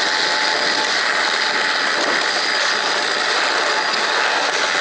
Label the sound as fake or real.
real